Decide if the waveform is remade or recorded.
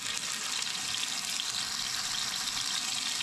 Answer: recorded